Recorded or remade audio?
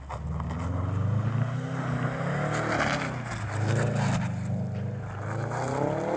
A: recorded